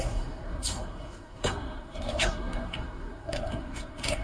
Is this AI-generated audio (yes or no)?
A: yes